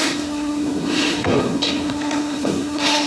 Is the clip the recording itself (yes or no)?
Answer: no